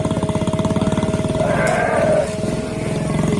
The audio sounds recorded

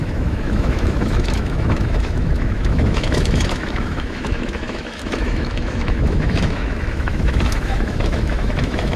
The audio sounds remade